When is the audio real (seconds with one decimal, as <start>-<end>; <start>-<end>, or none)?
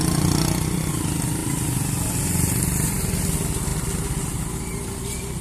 0.0-5.4